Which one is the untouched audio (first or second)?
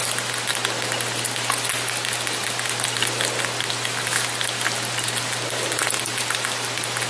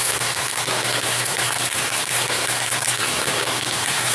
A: first